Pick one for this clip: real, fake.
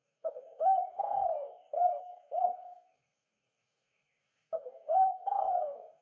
fake